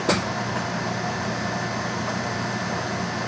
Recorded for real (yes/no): yes